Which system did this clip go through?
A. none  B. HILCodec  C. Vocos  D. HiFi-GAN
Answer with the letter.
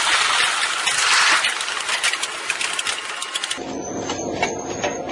A